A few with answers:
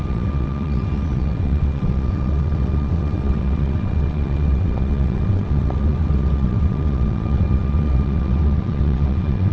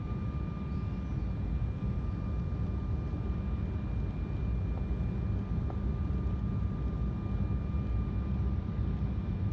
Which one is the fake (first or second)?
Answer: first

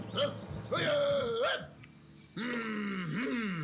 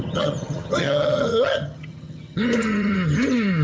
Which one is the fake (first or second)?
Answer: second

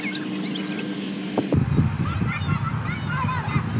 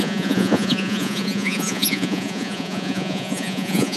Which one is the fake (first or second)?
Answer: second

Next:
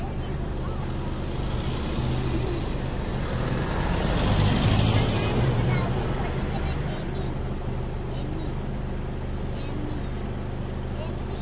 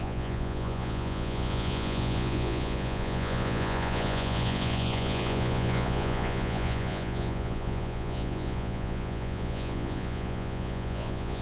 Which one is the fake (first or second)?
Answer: second